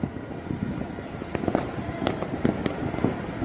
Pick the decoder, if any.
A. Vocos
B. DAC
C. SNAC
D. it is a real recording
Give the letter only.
D